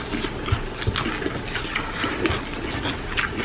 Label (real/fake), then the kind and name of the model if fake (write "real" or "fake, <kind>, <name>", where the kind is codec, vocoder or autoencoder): real